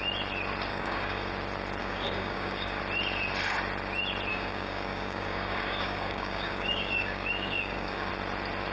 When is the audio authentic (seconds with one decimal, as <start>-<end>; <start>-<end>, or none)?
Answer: 0.0-0.7; 1.3-1.8; 2.8-4.3; 8.1-8.7